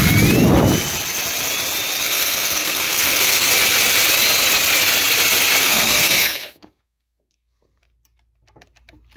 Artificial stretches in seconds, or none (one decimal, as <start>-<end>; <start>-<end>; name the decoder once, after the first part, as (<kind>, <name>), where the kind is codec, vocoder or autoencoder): 2.0-3.5 (codec, SNAC); 5.6-7.8